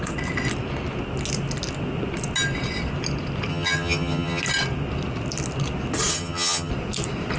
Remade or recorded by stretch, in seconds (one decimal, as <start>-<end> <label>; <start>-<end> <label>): 0.0-3.5 recorded; 3.5-4.4 remade; 4.4-6.1 recorded; 6.1-6.7 remade; 6.7-7.4 recorded